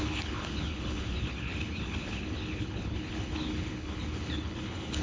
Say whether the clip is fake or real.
fake